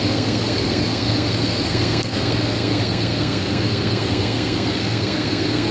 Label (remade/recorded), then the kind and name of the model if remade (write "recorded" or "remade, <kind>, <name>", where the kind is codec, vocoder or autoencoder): remade, codec, SNAC